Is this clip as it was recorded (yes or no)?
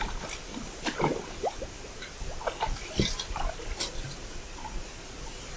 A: yes